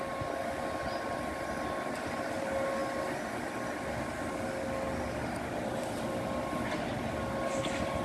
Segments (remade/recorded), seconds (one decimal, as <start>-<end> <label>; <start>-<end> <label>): 0.0-8.0 recorded

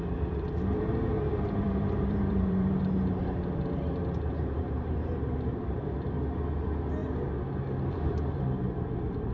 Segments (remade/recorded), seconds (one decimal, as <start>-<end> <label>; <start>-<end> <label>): 0.0-1.3 recorded; 1.3-5.9 remade; 5.9-9.3 recorded

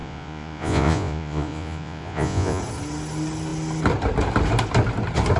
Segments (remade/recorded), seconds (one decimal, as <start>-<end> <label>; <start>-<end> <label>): 0.0-2.6 remade; 2.6-5.4 recorded

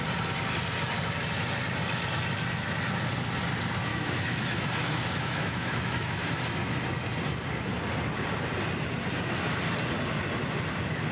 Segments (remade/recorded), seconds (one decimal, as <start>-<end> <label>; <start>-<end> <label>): 0.0-3.9 recorded; 3.9-6.3 remade; 6.3-11.1 recorded

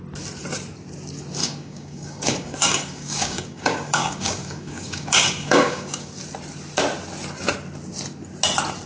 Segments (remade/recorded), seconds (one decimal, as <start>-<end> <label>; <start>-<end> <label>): 0.0-1.4 recorded; 1.4-6.1 remade; 6.1-8.9 recorded

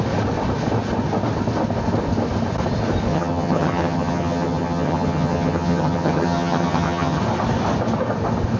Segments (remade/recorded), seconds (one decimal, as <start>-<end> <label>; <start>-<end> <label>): 0.0-3.1 recorded; 3.1-7.2 remade; 7.2-8.6 recorded